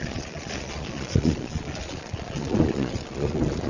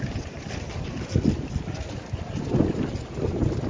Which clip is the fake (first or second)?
first